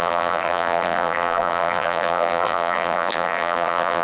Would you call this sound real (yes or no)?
no